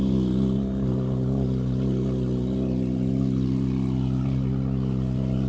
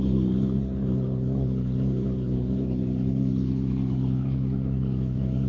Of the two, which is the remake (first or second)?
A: second